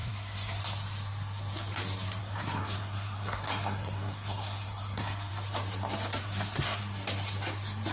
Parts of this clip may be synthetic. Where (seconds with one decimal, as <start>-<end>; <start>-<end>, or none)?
0.0-0.6; 2.2-5.3; 6.2-6.8